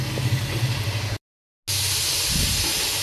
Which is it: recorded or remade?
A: recorded